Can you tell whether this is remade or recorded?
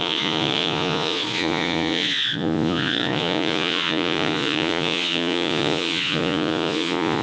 remade